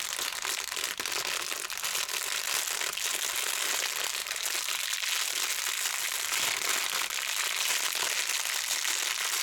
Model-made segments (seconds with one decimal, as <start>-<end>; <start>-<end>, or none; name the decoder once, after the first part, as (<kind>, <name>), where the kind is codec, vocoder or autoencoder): none